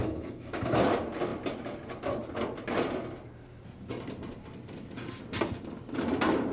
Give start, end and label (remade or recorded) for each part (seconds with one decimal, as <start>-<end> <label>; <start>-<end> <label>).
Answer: 0.0-0.9 remade; 0.9-6.5 recorded